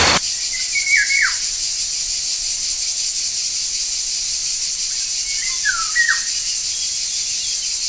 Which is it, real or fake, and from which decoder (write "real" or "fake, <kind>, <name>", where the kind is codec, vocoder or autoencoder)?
real